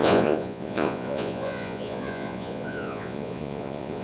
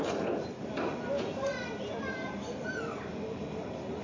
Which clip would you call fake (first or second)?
first